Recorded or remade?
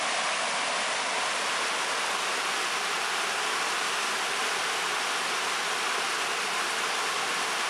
recorded